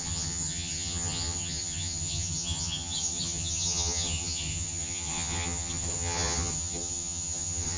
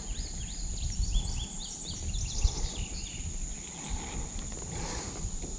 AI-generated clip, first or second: first